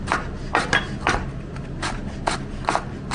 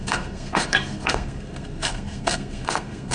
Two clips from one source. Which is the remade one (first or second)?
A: second